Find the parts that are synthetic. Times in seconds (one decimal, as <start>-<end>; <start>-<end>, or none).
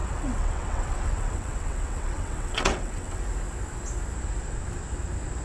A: 0.0-3.2